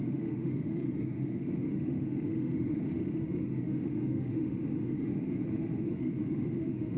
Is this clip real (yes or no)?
no